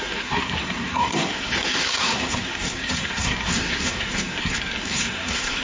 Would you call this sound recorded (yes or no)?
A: no